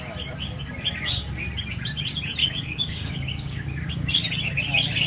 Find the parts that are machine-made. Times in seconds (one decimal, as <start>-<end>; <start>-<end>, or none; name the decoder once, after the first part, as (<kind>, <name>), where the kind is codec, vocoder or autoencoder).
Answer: 2.4-4.1 (codec, DAC)